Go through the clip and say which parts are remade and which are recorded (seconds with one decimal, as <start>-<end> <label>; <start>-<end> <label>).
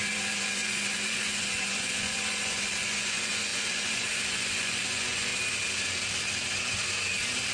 0.0-5.3 remade; 5.3-7.5 recorded